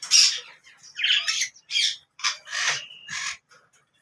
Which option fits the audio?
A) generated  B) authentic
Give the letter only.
A